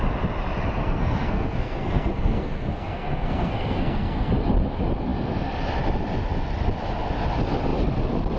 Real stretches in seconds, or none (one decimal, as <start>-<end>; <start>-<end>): 0.0-0.8; 4.3-8.4